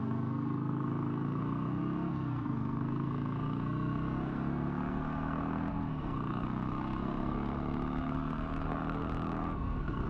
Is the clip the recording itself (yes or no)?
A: no